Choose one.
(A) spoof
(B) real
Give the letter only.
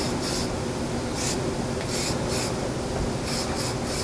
B